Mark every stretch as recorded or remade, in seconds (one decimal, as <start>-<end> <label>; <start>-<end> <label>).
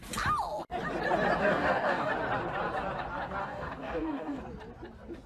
0.0-1.4 recorded; 1.4-2.1 remade; 2.1-3.4 recorded; 3.4-4.4 remade; 4.4-5.3 recorded